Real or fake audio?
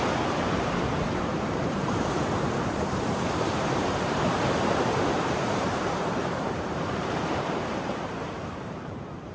fake